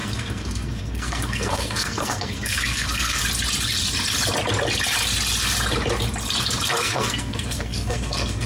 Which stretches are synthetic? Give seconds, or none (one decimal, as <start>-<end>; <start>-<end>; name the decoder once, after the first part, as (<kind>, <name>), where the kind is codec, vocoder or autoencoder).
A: 0.0-3.2 (codec, SNAC); 6.8-8.5